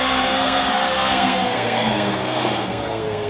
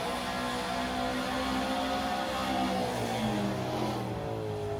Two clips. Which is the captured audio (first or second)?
second